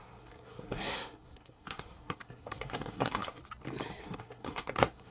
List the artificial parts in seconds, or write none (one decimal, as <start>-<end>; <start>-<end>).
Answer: 0.0-3.4; 4.0-5.1